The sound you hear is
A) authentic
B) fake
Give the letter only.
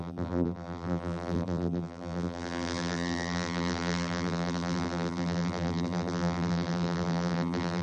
B